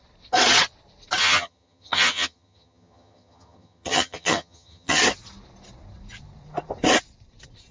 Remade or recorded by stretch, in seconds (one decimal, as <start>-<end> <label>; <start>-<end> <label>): 0.0-1.2 recorded; 1.2-5.0 remade; 5.0-7.7 recorded

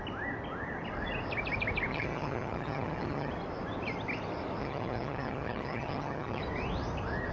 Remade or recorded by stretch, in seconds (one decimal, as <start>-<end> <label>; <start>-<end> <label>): 0.0-1.9 recorded; 1.9-3.3 remade; 3.3-4.6 recorded; 4.6-6.4 remade; 6.4-7.3 recorded

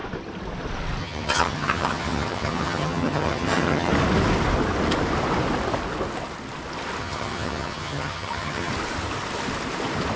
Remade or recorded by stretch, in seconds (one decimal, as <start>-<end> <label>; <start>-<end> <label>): 0.0-1.0 recorded; 1.0-3.9 remade; 3.9-7.0 recorded; 7.0-8.7 remade; 8.7-10.2 recorded

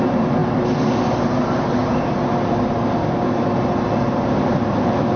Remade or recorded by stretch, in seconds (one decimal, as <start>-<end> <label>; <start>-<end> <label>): 0.0-5.2 recorded

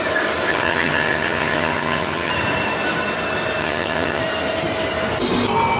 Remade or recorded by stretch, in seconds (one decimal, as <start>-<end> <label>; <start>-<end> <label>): 0.0-0.5 recorded; 0.5-2.3 remade; 2.3-3.6 recorded; 3.6-4.2 remade; 4.2-5.8 recorded

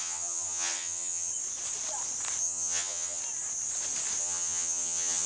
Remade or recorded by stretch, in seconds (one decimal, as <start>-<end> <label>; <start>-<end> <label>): 0.0-1.3 remade; 1.3-2.4 recorded; 2.4-3.2 remade; 3.2-4.2 recorded; 4.2-5.3 remade

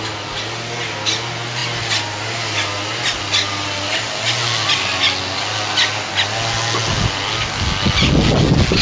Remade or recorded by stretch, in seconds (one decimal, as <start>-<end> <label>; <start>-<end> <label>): 0.0-8.8 recorded